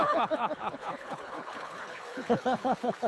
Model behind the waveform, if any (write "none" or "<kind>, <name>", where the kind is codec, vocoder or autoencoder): codec, HILCodec